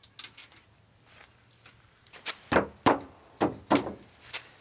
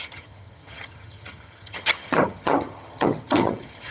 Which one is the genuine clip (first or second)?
first